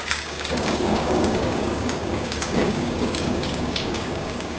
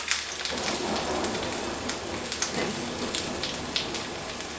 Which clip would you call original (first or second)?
second